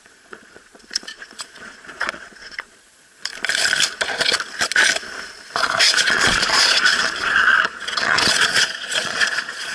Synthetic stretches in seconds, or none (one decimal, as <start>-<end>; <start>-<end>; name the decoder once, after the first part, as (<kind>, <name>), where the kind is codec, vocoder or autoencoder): 0.0-3.3 (vocoder, Vocos); 5.8-9.7